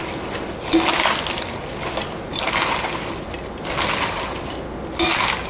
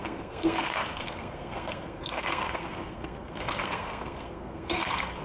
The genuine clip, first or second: first